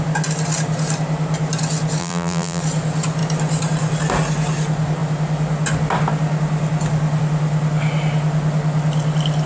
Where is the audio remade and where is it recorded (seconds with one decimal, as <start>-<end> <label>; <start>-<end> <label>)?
0.0-2.0 recorded; 2.0-2.6 remade; 2.6-9.5 recorded